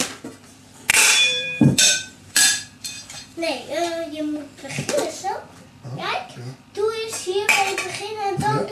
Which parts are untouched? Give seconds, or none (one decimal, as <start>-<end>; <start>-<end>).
0.0-0.9; 4.9-8.7

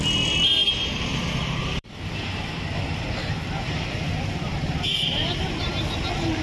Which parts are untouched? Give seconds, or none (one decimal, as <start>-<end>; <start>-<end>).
0.0-0.6; 2.5-5.2; 5.8-6.4

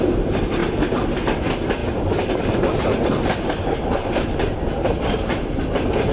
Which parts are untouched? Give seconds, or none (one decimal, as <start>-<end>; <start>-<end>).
0.6-1.4; 1.8-2.7; 5.3-6.1

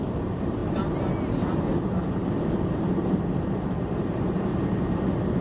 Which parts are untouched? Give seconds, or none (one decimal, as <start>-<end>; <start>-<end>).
0.6-1.8; 4.5-5.4

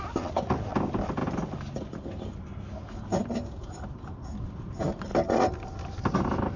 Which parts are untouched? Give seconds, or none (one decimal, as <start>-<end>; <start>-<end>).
0.0-5.1

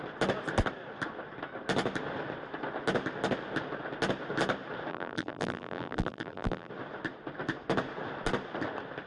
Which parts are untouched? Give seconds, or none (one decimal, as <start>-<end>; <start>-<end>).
0.0-4.9; 6.7-9.1

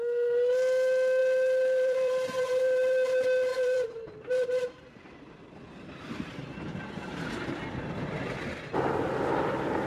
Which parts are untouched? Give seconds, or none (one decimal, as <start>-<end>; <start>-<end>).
0.0-1.2; 2.6-3.5; 7.2-9.9